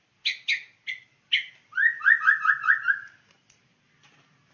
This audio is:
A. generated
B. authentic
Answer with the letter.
B